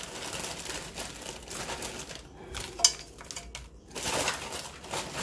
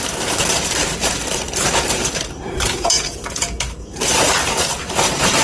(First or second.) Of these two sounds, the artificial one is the second